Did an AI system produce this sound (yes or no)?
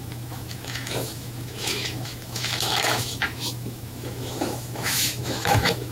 yes